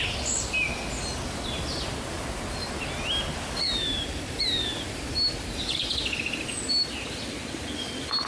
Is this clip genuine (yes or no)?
yes